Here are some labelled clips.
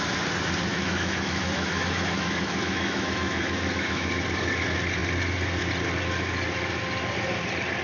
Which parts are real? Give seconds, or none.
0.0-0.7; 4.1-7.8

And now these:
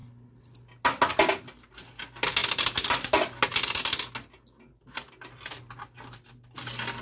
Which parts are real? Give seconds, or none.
0.0-7.0

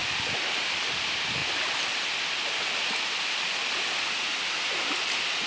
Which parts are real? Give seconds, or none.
0.0-5.5

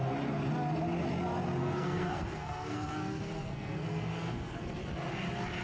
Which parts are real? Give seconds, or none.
0.0-1.6; 4.8-5.6

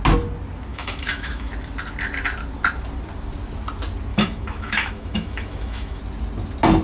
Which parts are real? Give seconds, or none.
0.0-0.7; 1.5-4.1; 6.0-6.8

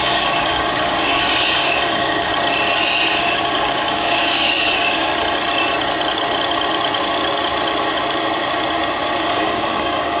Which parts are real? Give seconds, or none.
2.3-3.2; 5.1-9.2

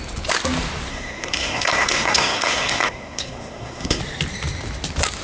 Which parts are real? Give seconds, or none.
0.0-0.9; 4.0-5.2